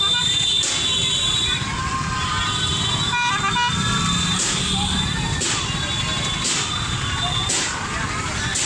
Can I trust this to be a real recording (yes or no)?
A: yes